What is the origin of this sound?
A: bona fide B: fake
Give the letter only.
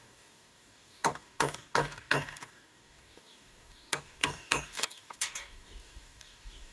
B